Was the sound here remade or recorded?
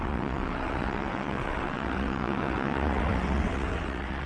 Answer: remade